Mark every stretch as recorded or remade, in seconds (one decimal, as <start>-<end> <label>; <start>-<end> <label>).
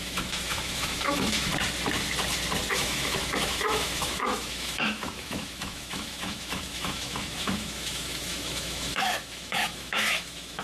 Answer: 0.0-1.5 remade; 1.5-2.7 recorded; 2.7-10.6 remade